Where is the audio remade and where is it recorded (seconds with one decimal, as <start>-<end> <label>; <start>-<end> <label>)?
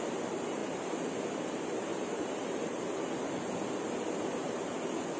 0.0-1.9 recorded; 1.9-3.1 remade; 3.1-5.2 recorded